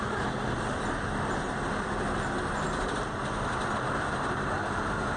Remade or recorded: remade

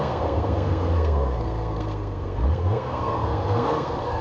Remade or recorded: remade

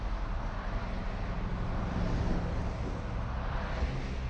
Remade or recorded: recorded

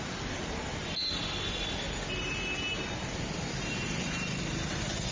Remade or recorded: recorded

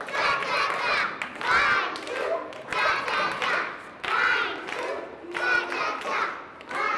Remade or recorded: recorded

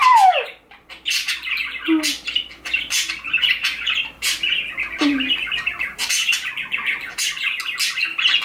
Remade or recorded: recorded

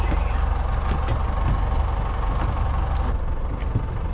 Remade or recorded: recorded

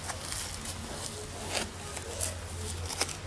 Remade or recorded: recorded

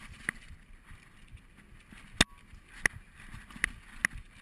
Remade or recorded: recorded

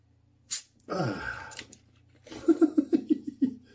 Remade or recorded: remade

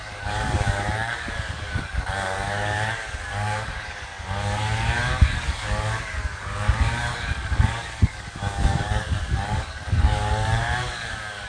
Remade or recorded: remade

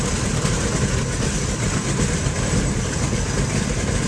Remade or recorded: recorded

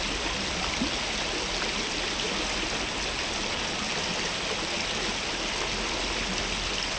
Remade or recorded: recorded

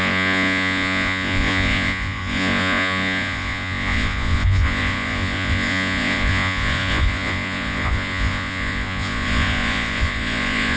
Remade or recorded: remade